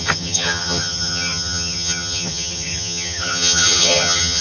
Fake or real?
fake